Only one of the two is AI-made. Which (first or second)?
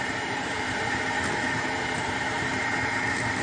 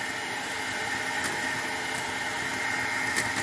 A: first